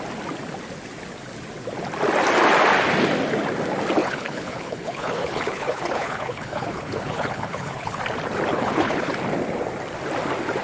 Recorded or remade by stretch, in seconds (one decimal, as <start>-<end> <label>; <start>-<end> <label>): 0.0-4.0 recorded; 4.0-8.0 remade; 8.0-8.5 recorded; 8.5-9.1 remade; 9.1-10.6 recorded